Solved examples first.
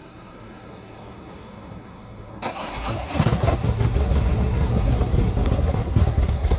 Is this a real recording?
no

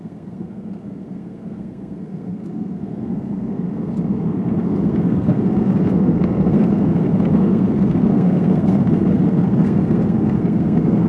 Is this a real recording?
no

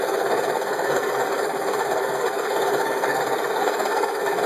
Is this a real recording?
no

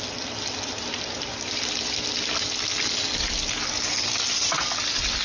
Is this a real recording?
yes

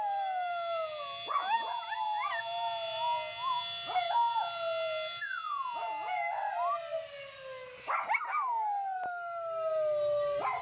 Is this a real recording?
yes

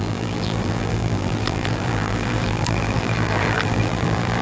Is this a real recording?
no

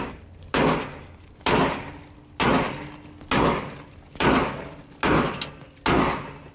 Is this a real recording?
yes